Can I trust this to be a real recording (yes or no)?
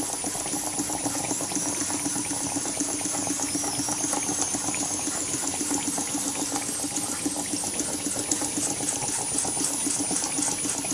yes